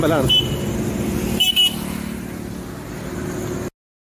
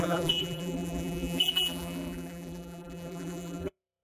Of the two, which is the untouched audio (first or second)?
first